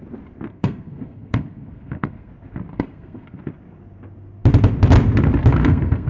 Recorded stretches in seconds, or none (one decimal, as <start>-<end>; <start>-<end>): 0.0-0.5; 2.3-2.7; 3.4-5.6